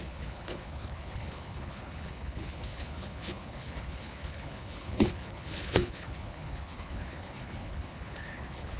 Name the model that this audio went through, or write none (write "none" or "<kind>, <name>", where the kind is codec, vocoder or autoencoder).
codec, HILCodec